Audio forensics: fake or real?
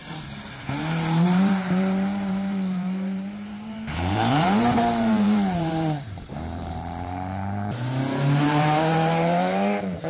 fake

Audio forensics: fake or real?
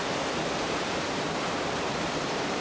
fake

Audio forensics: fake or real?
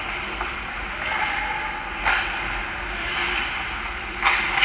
real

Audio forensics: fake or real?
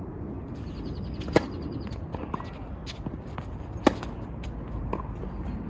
real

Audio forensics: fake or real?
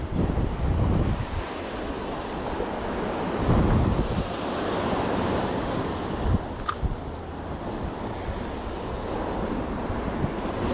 real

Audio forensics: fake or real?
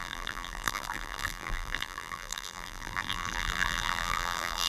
fake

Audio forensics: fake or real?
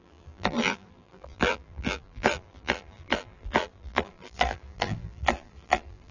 fake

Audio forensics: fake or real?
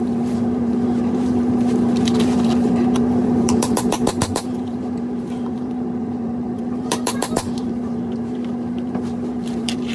fake